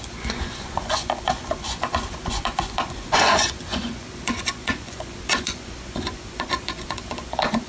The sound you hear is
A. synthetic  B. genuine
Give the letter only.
A